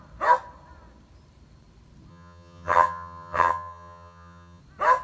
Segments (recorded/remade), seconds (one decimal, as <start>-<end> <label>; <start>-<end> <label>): 0.0-2.1 recorded; 2.1-4.6 remade; 4.6-5.0 recorded